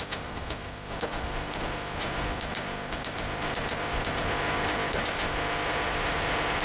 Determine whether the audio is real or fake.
real